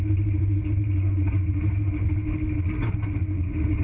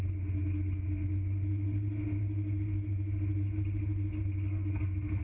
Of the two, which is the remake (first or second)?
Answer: first